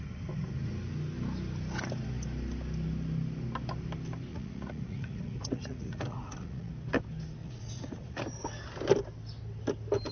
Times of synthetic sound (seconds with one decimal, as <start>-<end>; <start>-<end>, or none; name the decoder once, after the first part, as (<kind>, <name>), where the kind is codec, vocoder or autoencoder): 4.3-6.7 (vocoder, Vocos); 7.4-8.2